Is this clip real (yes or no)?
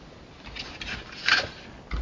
yes